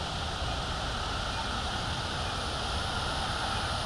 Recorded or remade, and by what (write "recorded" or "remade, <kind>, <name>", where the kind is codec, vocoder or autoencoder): recorded